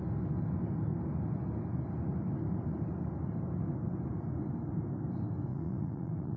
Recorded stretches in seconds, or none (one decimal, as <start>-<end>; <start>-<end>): 0.0-5.5